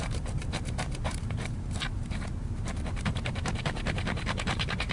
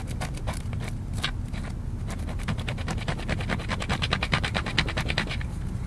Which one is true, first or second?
second